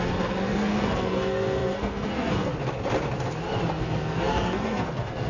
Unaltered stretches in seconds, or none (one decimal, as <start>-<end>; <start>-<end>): 2.5-3.7